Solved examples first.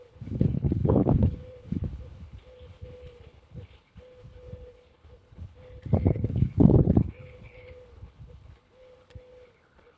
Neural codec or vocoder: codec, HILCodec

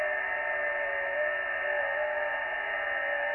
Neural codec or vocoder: none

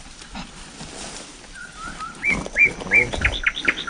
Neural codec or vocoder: none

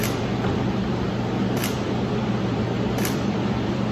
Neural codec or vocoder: vocoder, BigVGAN v2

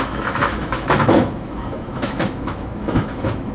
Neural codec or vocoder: autoencoder, DAC-VAE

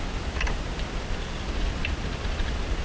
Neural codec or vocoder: none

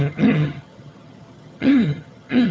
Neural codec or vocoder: vocoder, HiFi-GAN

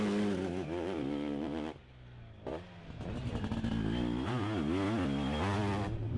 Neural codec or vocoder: none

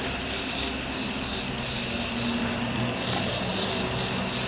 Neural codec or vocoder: none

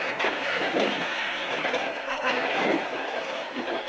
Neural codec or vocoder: codec, SNAC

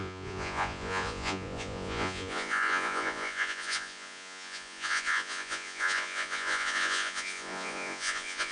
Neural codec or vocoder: vocoder, Vocos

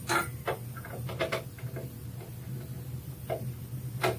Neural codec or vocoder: none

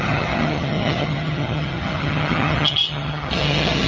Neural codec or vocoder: vocoder, HiFi-GAN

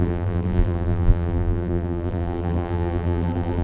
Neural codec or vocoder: vocoder, BigVGAN v2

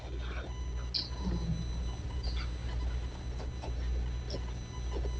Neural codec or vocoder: none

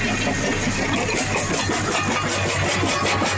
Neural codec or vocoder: none